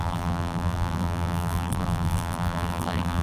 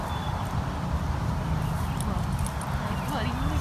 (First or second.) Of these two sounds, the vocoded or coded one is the first